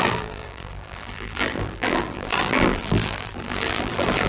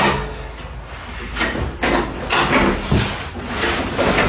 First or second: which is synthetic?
first